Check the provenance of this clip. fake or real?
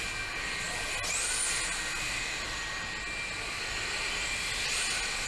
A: real